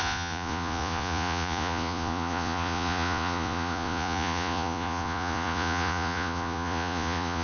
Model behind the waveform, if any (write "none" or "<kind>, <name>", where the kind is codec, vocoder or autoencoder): vocoder, Vocos